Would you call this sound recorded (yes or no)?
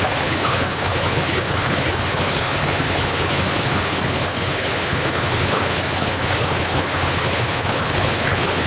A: no